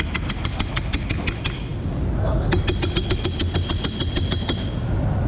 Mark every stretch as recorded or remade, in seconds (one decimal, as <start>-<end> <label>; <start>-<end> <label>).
0.0-5.3 recorded